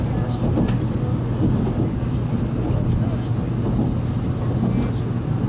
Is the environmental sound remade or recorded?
recorded